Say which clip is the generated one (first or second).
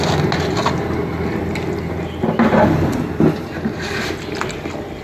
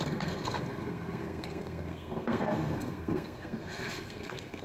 second